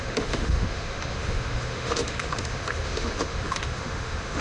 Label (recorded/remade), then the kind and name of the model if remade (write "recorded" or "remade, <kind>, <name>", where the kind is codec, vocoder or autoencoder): remade, autoencoder, DAC-VAE